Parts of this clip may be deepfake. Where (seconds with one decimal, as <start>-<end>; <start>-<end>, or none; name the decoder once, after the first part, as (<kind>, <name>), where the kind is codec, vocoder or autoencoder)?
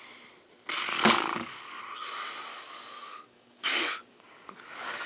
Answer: 0.9-1.8 (codec, DAC); 2.5-5.1